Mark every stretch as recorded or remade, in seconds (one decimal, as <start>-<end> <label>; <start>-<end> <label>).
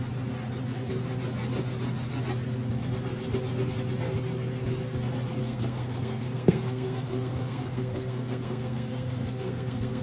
0.0-5.4 recorded; 5.4-10.0 remade